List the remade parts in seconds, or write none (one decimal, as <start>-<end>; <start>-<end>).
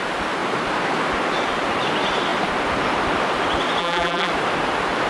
3.8-4.3